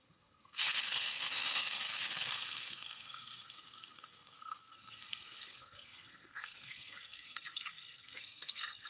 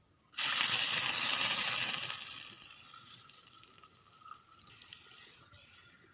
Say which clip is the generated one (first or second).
first